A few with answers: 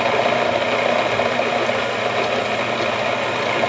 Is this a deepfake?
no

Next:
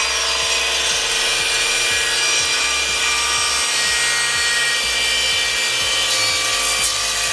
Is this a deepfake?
no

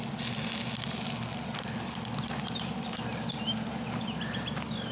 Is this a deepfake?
no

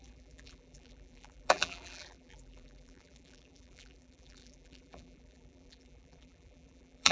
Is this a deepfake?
yes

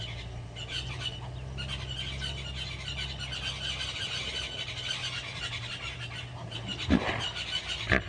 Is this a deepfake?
no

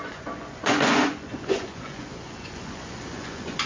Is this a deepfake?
yes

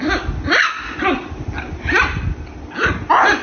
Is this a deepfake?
no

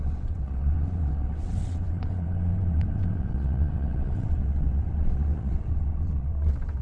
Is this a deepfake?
yes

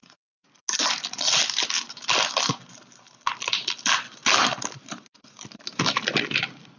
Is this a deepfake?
no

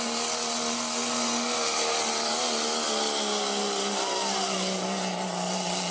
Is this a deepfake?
no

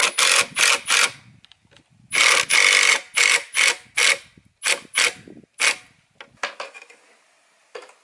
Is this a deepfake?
no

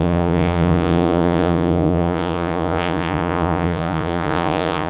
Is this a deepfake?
yes